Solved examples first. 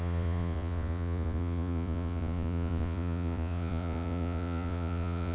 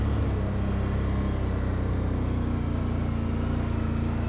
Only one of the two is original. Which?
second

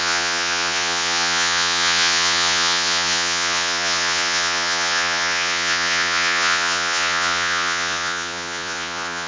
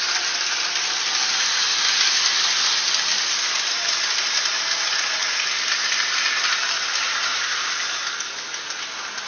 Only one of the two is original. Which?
second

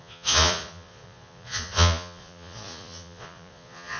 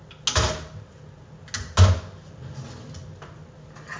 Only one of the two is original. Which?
second